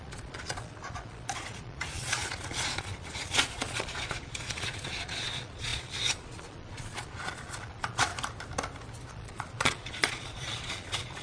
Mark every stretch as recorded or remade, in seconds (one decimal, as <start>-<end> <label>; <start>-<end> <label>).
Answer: 0.0-8.1 remade; 8.1-9.1 recorded; 9.1-11.2 remade